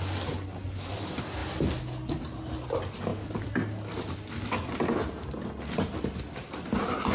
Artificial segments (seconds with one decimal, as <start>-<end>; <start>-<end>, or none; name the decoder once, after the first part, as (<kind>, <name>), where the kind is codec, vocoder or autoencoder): none